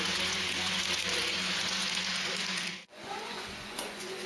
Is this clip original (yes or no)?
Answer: no